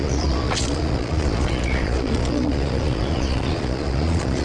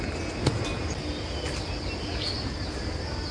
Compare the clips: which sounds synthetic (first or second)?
first